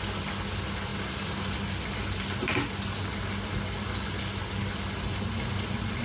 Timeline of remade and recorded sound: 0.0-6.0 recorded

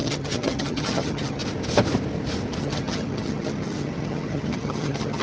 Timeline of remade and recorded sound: 0.0-1.4 remade; 1.4-2.6 recorded; 2.6-5.2 remade

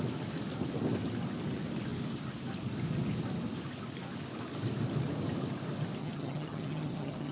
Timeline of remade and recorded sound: 0.0-6.0 recorded; 6.0-7.3 remade